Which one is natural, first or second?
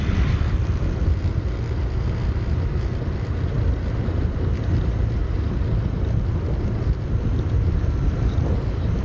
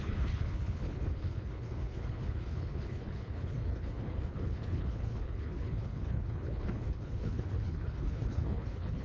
first